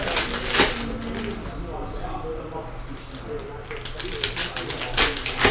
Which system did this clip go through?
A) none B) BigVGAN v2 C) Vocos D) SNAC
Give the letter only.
A